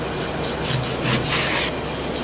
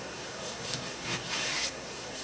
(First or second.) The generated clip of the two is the second